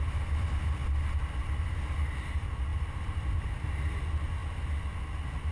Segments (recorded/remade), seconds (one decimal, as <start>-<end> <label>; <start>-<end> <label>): 0.0-2.7 recorded; 2.7-3.7 remade; 3.7-5.5 recorded